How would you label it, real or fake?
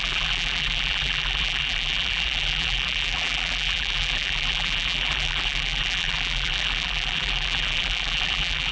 fake